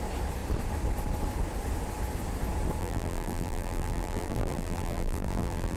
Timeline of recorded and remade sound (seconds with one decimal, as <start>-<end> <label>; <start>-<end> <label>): 0.0-2.8 recorded; 2.8-5.8 remade